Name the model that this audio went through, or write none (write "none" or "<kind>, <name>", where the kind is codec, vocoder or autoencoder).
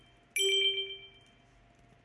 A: none